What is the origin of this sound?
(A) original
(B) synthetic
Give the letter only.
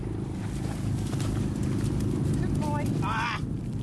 A